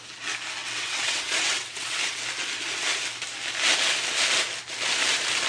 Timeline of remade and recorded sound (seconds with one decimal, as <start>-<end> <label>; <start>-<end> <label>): 0.0-0.6 recorded; 0.6-2.2 remade; 2.2-5.5 recorded